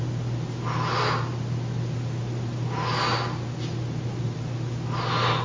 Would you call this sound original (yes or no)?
yes